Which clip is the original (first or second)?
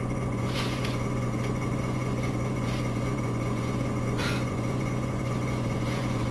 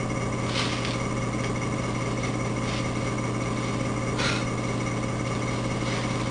second